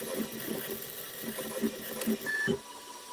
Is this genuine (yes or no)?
yes